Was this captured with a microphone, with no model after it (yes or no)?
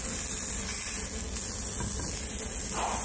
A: yes